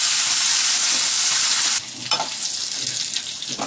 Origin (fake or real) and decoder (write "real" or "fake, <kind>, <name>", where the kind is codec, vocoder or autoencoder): real